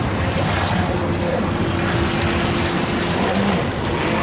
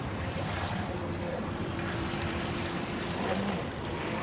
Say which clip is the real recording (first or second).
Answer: first